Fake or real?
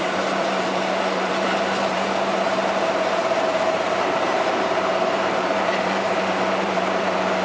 fake